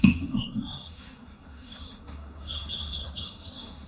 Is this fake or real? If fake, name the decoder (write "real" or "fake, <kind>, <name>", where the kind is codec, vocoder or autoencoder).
fake, codec, SNAC